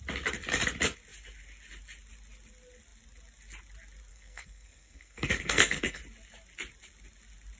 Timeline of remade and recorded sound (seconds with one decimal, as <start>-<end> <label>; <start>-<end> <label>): 0.0-4.1 recorded; 4.1-6.0 remade; 6.0-7.6 recorded